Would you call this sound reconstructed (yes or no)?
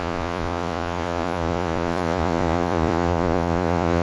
yes